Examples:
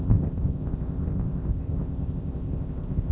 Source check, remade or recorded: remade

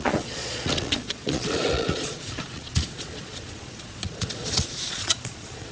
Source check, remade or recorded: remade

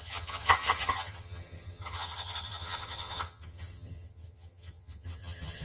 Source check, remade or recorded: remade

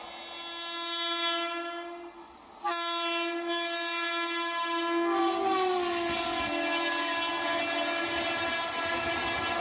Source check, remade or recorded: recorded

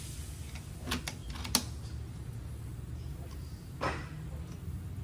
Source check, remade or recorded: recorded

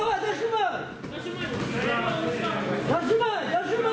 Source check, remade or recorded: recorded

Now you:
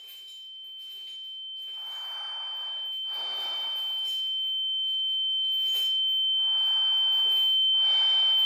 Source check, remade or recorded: recorded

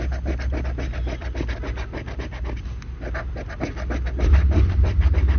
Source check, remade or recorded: recorded